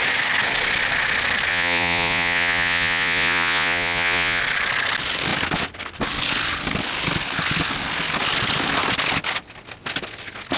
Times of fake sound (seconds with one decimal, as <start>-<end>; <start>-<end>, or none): 1.5-4.4